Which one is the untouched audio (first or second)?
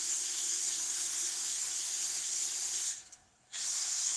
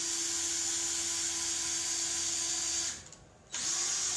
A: second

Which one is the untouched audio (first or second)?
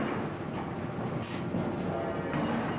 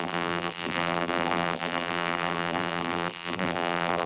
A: first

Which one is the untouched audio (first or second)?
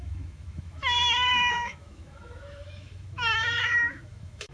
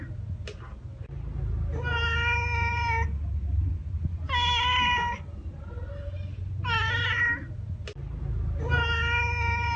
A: second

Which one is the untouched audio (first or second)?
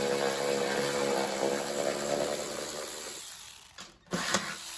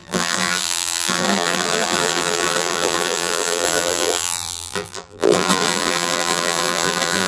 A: first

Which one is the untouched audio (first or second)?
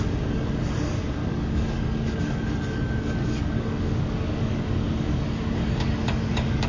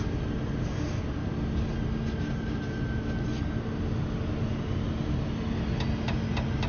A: second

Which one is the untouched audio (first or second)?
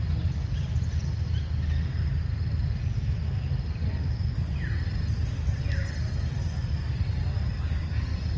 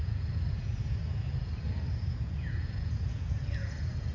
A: first